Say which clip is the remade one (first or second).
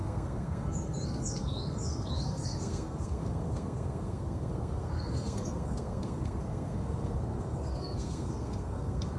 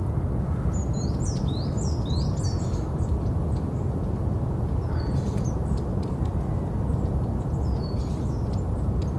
first